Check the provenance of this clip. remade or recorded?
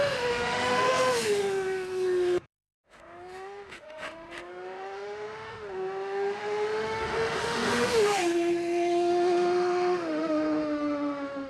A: remade